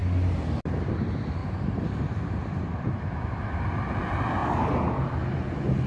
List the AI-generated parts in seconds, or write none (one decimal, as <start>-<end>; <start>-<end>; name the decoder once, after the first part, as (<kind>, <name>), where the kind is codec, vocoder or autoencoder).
1.4-3.6 (vocoder, BigVGAN v2); 4.4-5.5